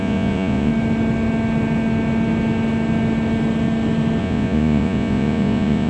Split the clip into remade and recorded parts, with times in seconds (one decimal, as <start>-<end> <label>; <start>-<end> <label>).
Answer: 0.0-0.7 remade; 0.7-4.2 recorded; 4.2-5.9 remade